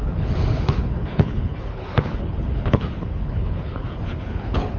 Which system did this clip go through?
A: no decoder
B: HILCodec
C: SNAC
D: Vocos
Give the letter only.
B